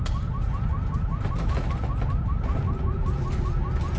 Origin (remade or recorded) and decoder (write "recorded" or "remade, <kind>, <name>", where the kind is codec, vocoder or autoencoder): recorded